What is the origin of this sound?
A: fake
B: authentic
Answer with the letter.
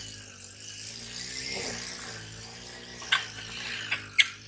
B